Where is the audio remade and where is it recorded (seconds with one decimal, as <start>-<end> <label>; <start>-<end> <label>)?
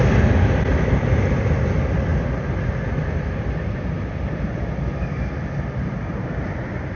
0.0-7.0 recorded